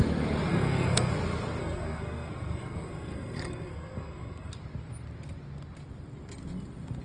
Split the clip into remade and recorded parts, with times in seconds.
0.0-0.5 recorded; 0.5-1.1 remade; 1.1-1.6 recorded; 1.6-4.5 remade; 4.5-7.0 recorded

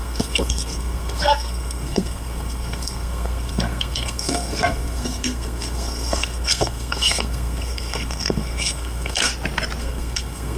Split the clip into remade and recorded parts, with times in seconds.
0.0-9.3 remade; 9.3-9.8 recorded; 9.8-10.6 remade

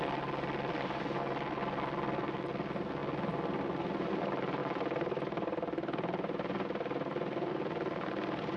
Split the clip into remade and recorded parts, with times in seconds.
0.0-8.6 recorded